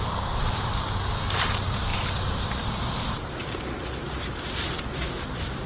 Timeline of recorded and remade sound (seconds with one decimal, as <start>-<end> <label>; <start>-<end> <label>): 0.0-5.7 recorded